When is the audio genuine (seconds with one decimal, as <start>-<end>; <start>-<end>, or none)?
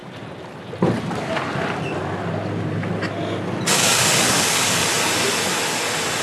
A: 0.0-3.7; 4.9-6.2